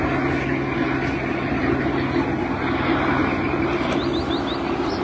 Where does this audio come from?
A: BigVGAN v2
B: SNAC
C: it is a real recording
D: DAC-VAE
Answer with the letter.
C